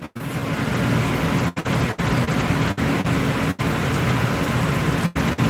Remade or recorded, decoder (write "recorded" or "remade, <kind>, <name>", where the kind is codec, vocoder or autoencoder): recorded